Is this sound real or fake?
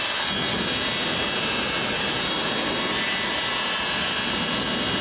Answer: real